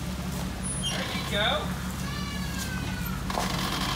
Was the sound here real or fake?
real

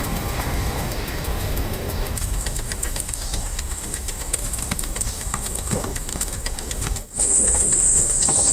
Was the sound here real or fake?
fake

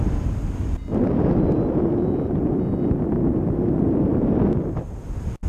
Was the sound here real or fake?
real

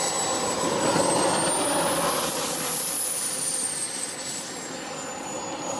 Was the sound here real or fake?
real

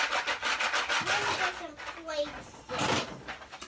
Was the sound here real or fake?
real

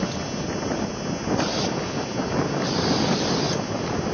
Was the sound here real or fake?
real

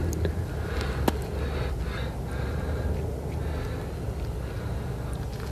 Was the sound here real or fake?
real